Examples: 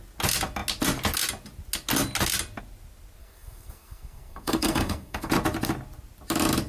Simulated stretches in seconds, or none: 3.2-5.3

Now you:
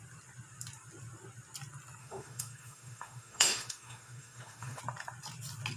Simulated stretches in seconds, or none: 2.0-4.8

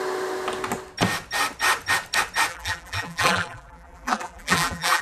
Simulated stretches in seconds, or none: 2.5-5.0

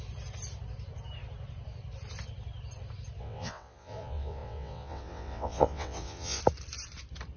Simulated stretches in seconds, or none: 3.2-6.4

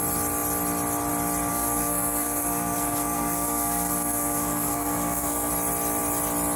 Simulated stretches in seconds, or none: 1.5-5.5

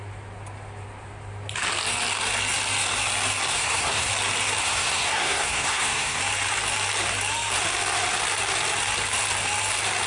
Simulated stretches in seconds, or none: 3.5-4.1; 4.6-6.2

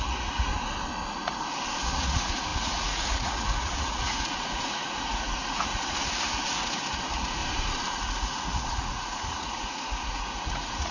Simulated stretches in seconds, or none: 0.0-0.5; 1.8-7.4; 7.9-10.9